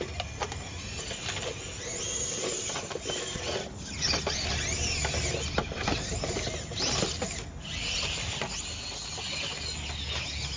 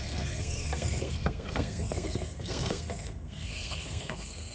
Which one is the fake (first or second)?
second